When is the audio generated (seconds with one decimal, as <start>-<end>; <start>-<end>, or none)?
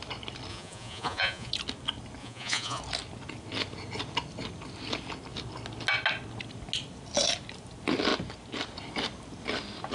0.5-1.5; 2.2-2.8